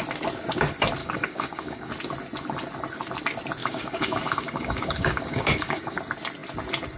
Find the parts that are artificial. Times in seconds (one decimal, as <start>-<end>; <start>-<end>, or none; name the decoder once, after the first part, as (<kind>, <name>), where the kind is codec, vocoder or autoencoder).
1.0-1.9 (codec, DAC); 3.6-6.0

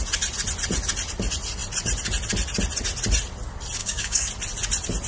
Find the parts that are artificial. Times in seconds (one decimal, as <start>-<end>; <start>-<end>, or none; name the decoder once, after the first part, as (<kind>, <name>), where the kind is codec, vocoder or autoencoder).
3.8-4.3 (codec, DAC)

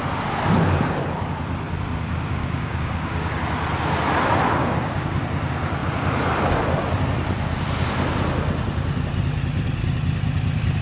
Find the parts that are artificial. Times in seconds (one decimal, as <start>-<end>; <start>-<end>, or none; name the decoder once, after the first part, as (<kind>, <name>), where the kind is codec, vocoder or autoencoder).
2.4-3.4 (codec, DAC); 4.6-5.2